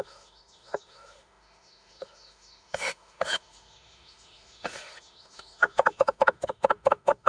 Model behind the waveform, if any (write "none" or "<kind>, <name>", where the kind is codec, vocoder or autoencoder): autoencoder, DAC-VAE